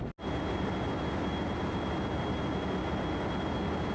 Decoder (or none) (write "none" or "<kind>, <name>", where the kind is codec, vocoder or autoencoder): none